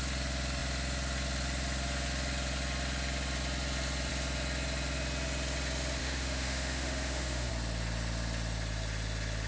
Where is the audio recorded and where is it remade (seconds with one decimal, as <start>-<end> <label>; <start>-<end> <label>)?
0.0-6.0 recorded; 6.0-7.5 remade; 7.5-9.5 recorded